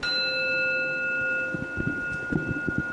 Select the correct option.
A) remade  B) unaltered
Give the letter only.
B